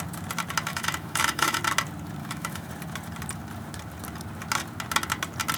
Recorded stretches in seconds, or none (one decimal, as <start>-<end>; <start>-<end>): 0.0-0.7; 1.6-2.2; 2.7-5.6